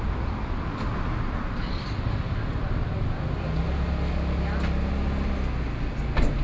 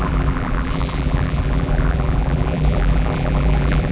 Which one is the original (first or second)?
first